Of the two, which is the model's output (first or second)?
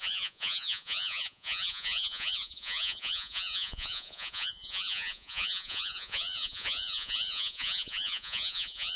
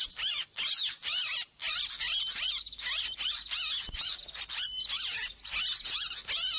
first